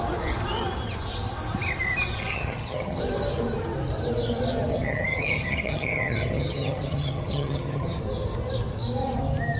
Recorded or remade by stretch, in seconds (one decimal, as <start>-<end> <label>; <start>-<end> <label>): 0.0-2.3 recorded; 2.3-3.0 remade; 3.0-4.7 recorded; 4.7-8.0 remade; 8.0-9.6 recorded